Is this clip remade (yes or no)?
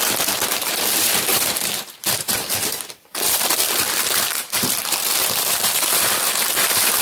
yes